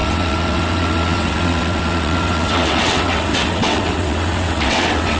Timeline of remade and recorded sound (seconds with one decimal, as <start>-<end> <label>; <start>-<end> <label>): 0.0-5.2 remade